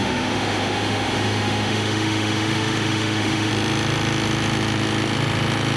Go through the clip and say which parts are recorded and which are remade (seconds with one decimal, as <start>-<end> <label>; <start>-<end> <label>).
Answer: 0.0-3.5 remade; 3.5-5.8 recorded

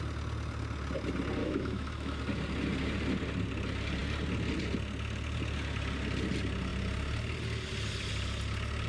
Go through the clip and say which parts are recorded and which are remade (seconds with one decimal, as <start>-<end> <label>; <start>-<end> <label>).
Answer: 0.0-1.4 recorded; 1.4-2.2 remade; 2.2-8.9 recorded

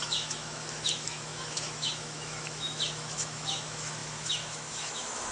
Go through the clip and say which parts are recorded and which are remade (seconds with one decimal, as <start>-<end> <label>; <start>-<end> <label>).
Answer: 0.0-5.3 remade

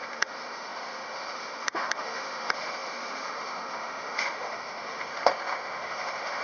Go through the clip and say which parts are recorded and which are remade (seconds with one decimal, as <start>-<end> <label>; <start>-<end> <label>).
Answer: 0.0-6.4 remade

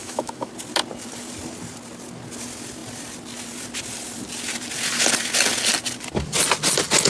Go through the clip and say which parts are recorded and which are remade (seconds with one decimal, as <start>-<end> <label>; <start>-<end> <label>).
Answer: 0.0-0.5 remade; 0.5-7.1 recorded